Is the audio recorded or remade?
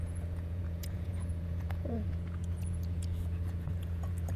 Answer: remade